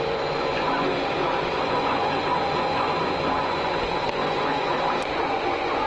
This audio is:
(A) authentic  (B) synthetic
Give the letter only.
B